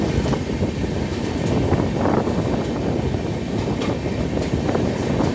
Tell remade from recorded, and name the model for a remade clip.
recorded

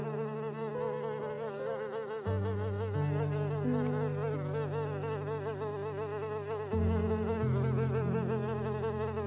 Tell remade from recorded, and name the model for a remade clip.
recorded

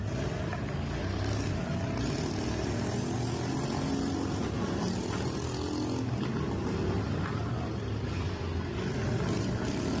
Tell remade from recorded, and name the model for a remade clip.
recorded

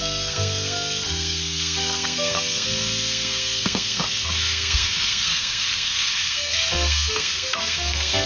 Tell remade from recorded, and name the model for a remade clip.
remade, codec, SNAC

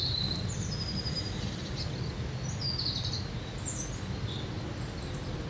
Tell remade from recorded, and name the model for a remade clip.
recorded